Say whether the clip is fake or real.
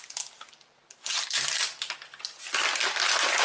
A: real